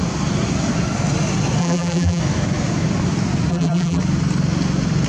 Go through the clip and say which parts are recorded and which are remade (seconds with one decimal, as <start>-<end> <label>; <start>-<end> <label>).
0.0-1.6 recorded; 1.6-2.2 remade; 2.2-3.5 recorded; 3.5-4.0 remade; 4.0-5.1 recorded